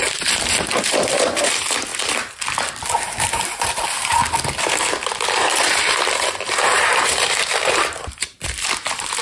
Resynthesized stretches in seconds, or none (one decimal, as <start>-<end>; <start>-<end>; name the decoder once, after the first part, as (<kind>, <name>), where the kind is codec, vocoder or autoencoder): 0.0-1.9 (vocoder, BigVGAN v2); 3.2-4.2; 4.7-9.2